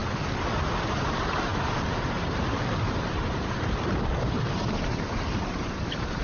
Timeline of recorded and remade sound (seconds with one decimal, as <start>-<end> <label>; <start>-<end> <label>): 0.0-0.8 recorded; 0.8-6.2 remade